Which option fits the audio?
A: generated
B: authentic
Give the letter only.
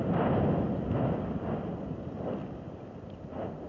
B